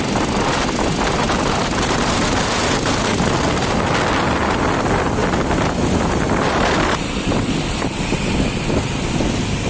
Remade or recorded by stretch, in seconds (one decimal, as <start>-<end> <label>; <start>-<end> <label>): 0.0-9.7 recorded